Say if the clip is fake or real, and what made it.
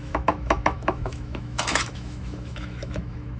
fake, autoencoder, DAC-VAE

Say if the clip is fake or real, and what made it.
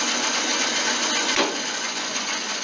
fake, vocoder, Vocos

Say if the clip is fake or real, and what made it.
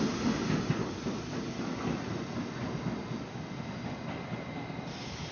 real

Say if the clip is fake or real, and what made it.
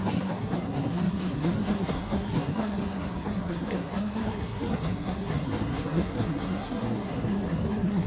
fake, codec, SNAC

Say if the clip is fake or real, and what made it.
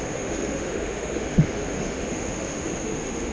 fake, autoencoder, DAC-VAE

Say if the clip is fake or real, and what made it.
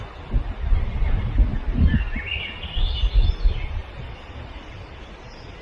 real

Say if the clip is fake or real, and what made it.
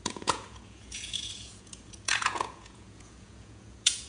fake, vocoder, Vocos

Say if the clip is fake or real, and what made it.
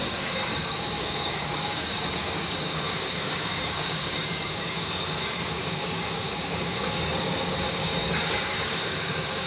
fake, codec, DAC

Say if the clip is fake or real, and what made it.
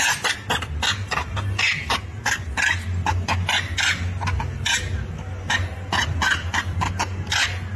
real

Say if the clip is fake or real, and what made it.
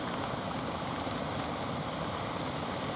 real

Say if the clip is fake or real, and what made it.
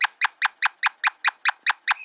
real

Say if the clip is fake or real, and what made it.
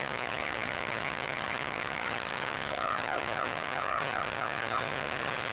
fake, vocoder, HiFi-GAN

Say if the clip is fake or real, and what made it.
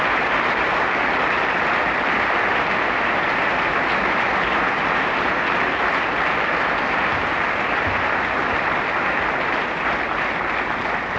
real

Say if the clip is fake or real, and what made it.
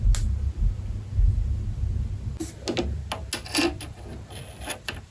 real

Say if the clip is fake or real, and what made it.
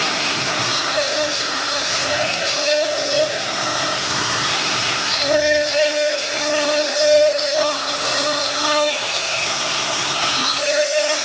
fake, codec, SNAC